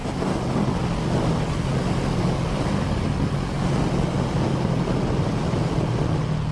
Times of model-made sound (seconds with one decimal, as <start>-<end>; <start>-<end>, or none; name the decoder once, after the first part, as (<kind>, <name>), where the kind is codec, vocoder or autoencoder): none